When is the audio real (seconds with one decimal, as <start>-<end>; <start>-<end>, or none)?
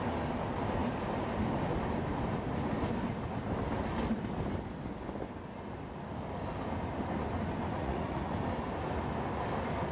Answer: 0.0-7.8; 8.3-9.9